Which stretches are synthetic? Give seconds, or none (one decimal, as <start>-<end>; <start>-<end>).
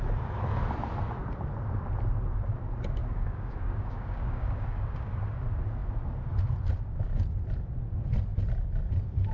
3.0-5.2